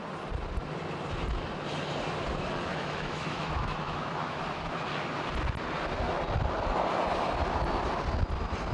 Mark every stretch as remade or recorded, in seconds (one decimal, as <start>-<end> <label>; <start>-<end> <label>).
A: 0.0-2.7 recorded; 2.7-4.4 remade; 4.4-8.7 recorded

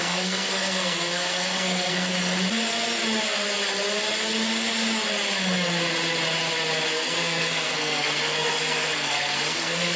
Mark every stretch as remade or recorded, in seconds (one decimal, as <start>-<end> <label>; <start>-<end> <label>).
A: 0.0-2.1 remade; 2.1-6.9 recorded; 6.9-10.0 remade

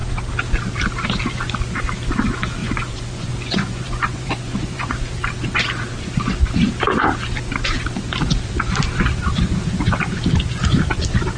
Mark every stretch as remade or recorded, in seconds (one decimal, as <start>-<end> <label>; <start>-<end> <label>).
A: 0.0-2.6 recorded; 2.6-5.0 remade; 5.0-11.4 recorded

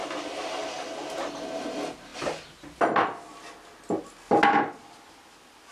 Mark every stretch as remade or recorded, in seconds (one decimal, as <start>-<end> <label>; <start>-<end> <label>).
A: 0.0-5.7 recorded

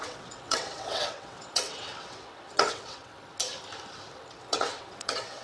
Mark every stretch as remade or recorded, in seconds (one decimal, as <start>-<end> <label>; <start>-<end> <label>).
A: 0.0-3.1 remade; 3.1-4.3 recorded; 4.3-5.4 remade

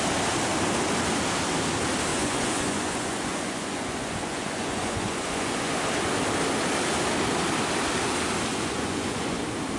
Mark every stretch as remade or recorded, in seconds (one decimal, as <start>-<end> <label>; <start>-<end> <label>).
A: 0.0-2.1 recorded; 2.1-5.8 remade; 5.8-8.5 recorded; 8.5-9.4 remade; 9.4-9.8 recorded

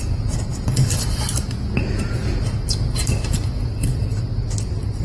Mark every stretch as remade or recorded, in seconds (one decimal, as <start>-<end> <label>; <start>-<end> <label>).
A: 0.0-5.0 recorded